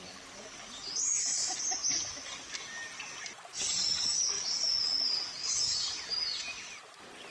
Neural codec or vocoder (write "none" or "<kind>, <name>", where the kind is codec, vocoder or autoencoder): none